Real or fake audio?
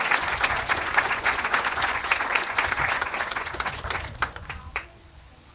fake